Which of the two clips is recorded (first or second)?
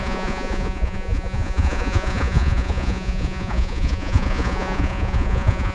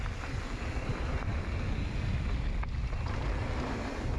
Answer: second